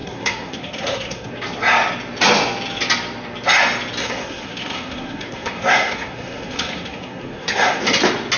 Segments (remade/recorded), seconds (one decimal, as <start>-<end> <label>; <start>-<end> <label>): 0.0-1.3 remade; 1.3-4.0 recorded; 4.0-7.8 remade; 7.8-8.4 recorded